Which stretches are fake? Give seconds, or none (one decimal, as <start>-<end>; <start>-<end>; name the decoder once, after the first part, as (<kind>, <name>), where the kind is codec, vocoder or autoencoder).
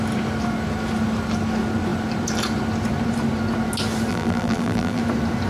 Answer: 4.1-5.0 (vocoder, BigVGAN v2)